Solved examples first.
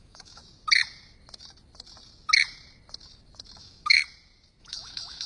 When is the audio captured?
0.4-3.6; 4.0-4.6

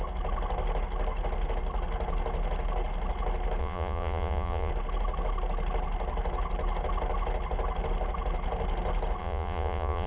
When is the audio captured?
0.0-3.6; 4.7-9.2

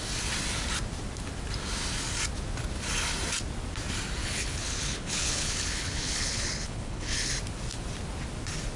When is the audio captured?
0.0-4.2; 7.3-8.8

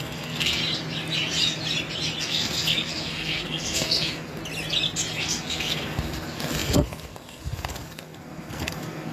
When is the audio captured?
0.6-2.2; 4.4-5.2